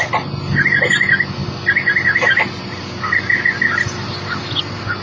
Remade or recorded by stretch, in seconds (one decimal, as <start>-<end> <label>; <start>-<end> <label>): 0.0-5.0 recorded